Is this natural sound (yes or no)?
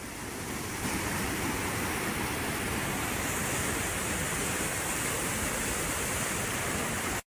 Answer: yes